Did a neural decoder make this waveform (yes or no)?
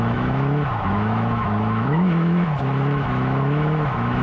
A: yes